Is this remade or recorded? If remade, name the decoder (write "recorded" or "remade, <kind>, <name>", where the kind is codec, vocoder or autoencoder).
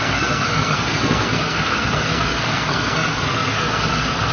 remade, codec, SNAC